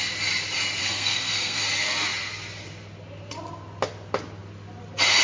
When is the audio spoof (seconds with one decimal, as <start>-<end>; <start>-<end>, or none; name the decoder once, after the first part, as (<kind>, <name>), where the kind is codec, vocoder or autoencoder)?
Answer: 0.8-1.6 (codec, SNAC)